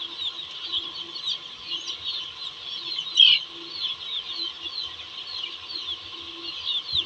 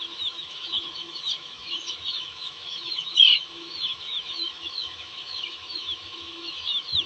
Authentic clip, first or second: first